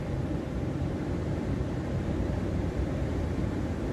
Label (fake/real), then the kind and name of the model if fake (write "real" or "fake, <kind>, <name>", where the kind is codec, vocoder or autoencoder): fake, vocoder, BigVGAN v2